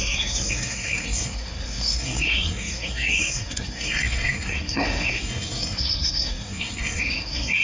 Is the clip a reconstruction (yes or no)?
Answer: yes